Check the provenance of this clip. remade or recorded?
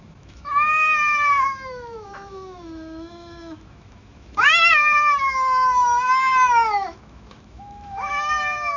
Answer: remade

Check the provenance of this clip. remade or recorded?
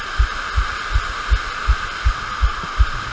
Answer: recorded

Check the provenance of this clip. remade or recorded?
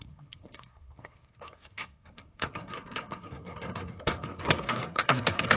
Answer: remade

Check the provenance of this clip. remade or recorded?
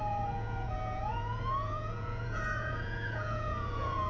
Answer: remade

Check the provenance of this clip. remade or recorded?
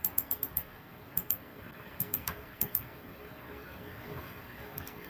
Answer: remade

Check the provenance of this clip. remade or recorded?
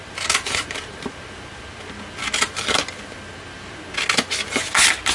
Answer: recorded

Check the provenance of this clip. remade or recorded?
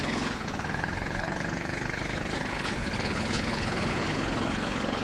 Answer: remade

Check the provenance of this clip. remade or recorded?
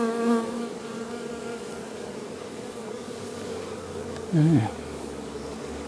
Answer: remade